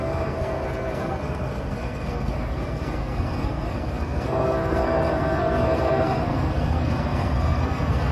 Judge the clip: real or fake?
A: fake